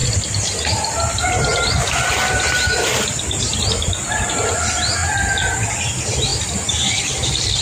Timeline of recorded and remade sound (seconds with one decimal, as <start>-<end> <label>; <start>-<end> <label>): 0.0-1.1 remade; 1.1-1.5 recorded; 1.5-3.1 remade; 3.1-6.3 recorded; 6.3-7.6 remade